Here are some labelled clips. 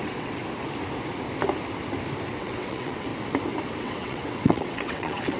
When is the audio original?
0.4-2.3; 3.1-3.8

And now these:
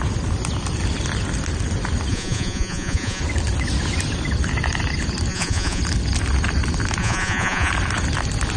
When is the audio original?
0.0-2.1; 3.2-5.3; 5.8-7.0; 7.7-8.6